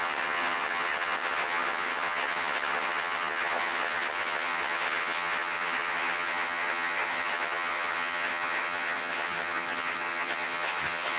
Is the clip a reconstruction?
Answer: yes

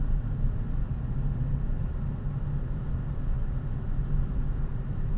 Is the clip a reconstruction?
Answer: no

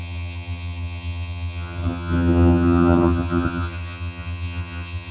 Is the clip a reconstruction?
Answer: yes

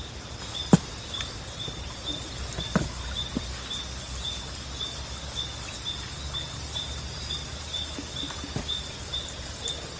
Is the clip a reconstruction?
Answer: no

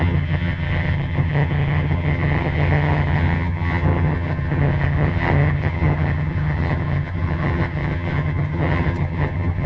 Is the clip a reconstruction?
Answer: yes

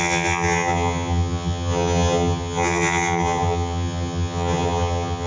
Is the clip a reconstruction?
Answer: yes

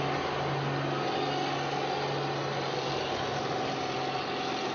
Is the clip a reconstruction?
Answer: no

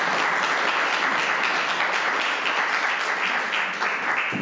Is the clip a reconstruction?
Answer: no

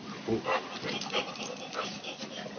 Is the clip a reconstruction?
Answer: no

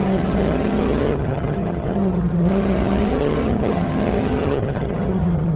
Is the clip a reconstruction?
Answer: yes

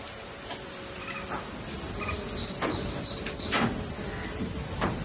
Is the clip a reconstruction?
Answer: no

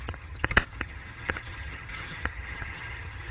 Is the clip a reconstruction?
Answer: yes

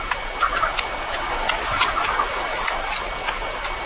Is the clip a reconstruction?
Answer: no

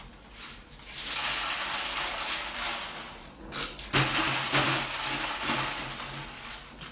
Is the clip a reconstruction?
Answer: no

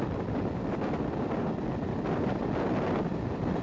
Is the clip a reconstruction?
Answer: no